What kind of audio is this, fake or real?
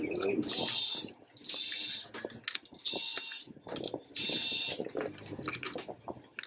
real